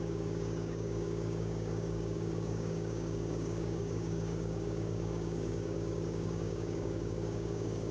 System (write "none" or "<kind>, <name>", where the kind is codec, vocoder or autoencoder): codec, DAC